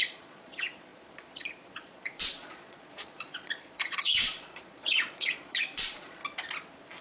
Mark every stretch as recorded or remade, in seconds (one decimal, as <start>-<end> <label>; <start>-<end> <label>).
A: 0.0-6.2 remade; 6.2-7.0 recorded